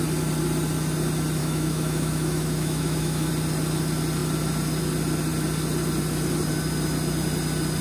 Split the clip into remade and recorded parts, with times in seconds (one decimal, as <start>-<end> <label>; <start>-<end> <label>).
0.0-1.4 recorded; 1.4-3.3 remade; 3.3-7.8 recorded